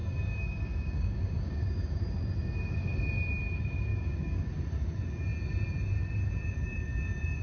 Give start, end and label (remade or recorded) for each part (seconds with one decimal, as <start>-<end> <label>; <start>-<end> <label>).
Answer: 0.0-2.0 remade; 2.0-3.9 recorded; 3.9-4.5 remade; 4.5-7.4 recorded

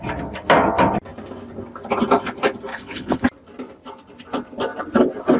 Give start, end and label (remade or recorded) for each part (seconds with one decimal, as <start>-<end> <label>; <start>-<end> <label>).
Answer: 0.0-2.7 recorded; 2.7-3.2 remade; 3.2-5.4 recorded

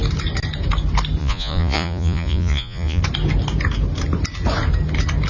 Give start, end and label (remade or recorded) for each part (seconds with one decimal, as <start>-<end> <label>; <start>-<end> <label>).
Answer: 0.0-1.2 recorded; 1.2-3.0 remade; 3.0-5.3 recorded

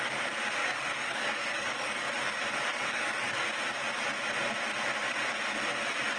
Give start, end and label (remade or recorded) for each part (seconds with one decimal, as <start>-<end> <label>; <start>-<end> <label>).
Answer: 0.0-0.6 recorded; 0.6-2.1 remade; 2.1-2.7 recorded; 2.7-3.4 remade; 3.4-6.2 recorded